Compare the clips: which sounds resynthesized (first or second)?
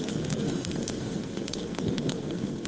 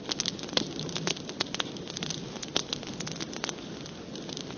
first